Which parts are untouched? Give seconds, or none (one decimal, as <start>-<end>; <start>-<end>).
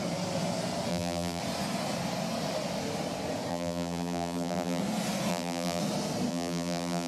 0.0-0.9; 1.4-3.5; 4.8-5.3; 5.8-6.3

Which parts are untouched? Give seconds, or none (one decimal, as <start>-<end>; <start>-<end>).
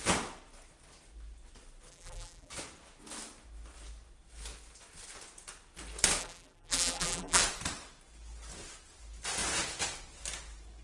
0.0-1.9; 2.5-6.2; 7.4-10.8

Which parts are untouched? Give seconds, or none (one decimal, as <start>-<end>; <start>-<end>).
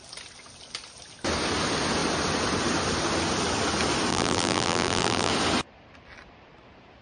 0.0-4.1; 5.3-7.0